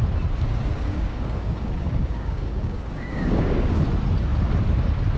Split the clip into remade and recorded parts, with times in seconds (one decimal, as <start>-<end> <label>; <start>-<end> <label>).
0.0-0.7 recorded; 0.7-3.8 remade; 3.8-5.2 recorded